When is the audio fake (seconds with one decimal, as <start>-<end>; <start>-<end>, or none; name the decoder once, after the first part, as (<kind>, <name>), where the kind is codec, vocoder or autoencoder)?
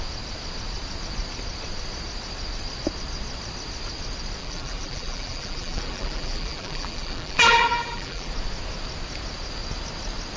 4.4-8.3 (vocoder, BigVGAN v2)